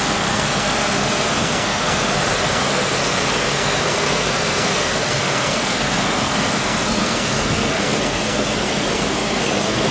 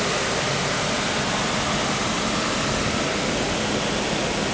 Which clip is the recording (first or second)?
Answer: second